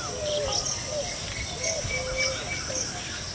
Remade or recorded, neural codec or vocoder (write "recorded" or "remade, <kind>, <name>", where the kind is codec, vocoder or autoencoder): recorded